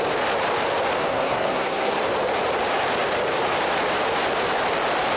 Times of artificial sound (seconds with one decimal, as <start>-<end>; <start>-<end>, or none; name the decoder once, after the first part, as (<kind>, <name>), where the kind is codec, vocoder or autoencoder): 1.0-2.0 (codec, SNAC)